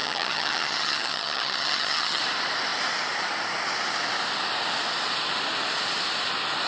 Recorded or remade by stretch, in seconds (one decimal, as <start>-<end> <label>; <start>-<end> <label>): 0.0-2.2 remade; 2.2-6.7 recorded